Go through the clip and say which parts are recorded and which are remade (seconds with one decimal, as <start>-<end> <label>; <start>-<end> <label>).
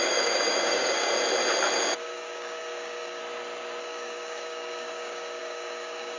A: 0.0-1.1 remade; 1.1-2.0 recorded; 2.0-3.2 remade; 3.2-3.8 recorded; 3.8-6.2 remade